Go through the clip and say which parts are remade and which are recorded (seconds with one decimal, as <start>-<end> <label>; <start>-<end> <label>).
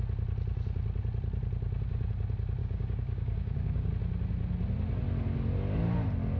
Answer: 0.0-2.6 recorded; 2.6-3.9 remade; 3.9-6.4 recorded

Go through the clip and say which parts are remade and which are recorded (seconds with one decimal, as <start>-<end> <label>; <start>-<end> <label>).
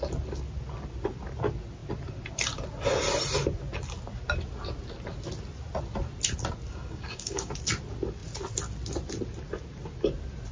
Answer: 0.0-6.7 recorded; 6.7-7.5 remade; 7.5-10.5 recorded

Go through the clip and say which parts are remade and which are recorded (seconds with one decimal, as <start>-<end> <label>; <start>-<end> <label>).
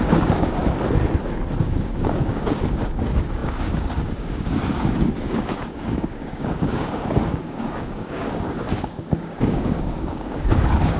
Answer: 0.0-0.6 remade; 0.6-1.6 recorded; 1.6-11.0 remade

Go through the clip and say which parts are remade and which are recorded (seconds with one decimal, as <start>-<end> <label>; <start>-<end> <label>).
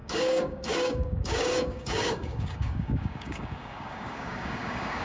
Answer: 0.0-5.0 remade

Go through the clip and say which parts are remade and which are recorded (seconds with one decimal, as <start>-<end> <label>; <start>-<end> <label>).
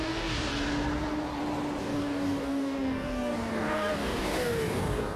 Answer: 0.0-0.5 remade; 0.5-1.8 recorded; 1.8-5.2 remade